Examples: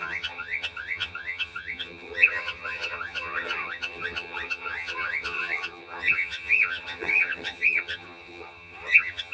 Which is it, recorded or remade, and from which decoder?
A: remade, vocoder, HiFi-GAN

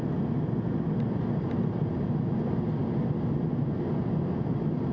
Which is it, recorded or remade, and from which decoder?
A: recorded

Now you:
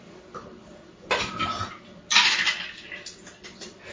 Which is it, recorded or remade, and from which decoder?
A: recorded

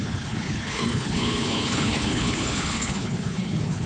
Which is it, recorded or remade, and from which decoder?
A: remade, codec, HILCodec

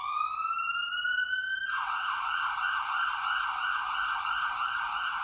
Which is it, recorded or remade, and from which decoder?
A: recorded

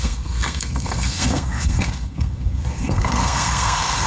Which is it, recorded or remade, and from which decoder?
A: remade, codec, SNAC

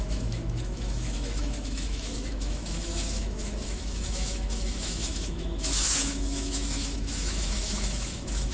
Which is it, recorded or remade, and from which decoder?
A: remade, autoencoder, DAC-VAE